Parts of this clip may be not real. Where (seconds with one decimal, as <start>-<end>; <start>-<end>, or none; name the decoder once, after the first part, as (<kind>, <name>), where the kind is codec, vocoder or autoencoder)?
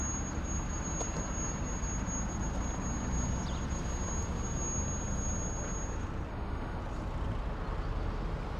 6.3-6.8 (autoencoder, DAC-VAE)